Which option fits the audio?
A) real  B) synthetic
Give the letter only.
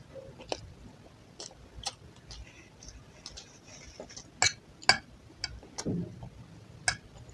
A